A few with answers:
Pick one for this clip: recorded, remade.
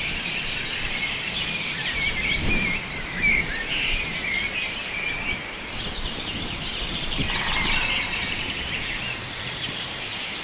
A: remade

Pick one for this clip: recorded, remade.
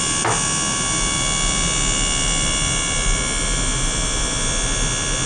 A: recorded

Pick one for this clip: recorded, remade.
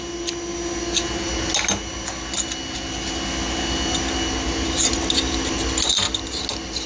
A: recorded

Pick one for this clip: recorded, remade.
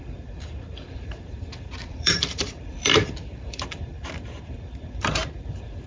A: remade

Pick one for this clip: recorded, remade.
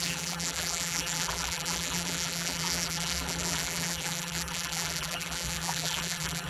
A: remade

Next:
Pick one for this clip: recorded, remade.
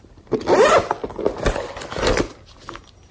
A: recorded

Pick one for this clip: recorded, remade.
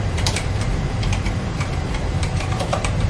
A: remade